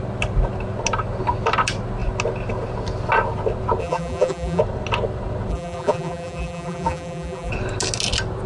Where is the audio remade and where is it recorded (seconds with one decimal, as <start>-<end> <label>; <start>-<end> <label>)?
0.0-3.8 recorded; 3.8-4.6 remade; 4.6-5.5 recorded; 5.5-7.5 remade; 7.5-8.5 recorded